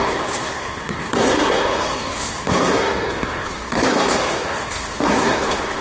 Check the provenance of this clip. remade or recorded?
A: remade